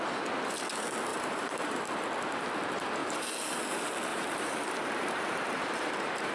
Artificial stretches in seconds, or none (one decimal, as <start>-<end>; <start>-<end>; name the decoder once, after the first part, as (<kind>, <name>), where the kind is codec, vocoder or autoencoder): 1.1-1.9 (vocoder, BigVGAN v2); 4.1-6.3